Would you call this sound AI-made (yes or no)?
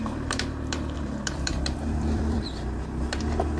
yes